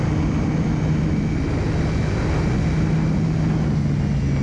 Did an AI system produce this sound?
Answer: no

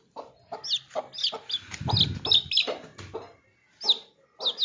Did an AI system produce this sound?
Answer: no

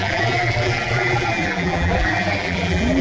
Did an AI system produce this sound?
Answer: yes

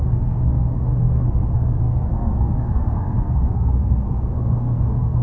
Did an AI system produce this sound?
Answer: yes